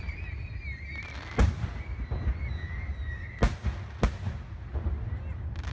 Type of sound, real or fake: real